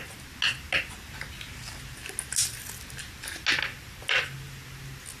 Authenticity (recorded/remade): recorded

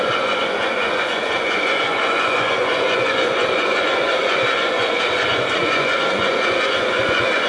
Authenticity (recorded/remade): remade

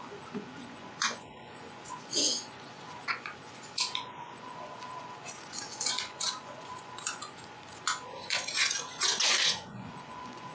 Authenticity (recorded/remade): remade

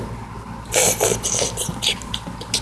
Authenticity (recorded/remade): recorded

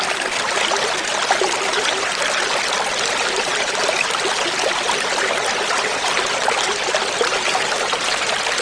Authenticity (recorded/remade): recorded